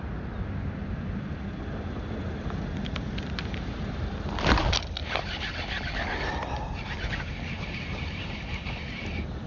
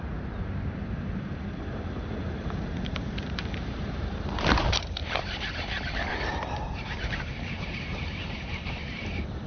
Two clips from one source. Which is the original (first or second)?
first